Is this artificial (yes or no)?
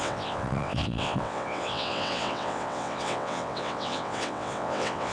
yes